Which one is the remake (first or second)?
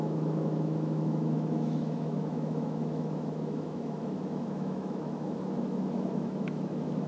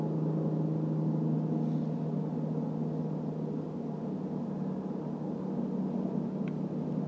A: first